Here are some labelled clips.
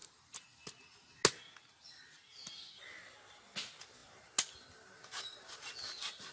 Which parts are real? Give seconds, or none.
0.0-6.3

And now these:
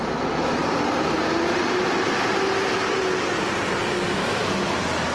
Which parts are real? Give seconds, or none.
0.0-5.1

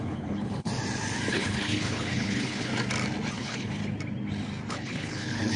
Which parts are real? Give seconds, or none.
0.7-1.3; 2.7-3.3; 3.8-4.7

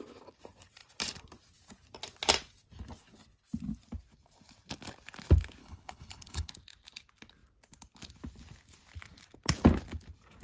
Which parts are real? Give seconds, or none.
0.0-5.6; 6.5-10.4

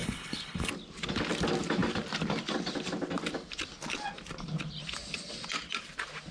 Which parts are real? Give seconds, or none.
0.7-6.3

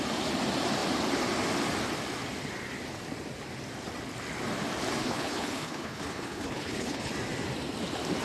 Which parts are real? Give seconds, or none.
0.0-5.0; 7.1-8.2

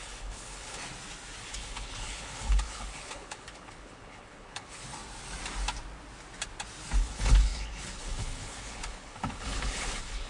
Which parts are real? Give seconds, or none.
0.8-1.4; 4.9-7.0

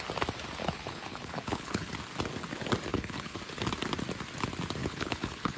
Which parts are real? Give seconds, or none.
0.0-0.6; 1.9-2.9; 3.4-4.8